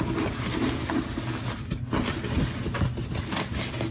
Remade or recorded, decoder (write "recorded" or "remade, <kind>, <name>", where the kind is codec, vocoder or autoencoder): recorded